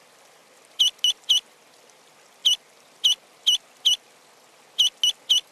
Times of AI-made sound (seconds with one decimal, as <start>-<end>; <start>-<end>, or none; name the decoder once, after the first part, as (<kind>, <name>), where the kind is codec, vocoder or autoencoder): none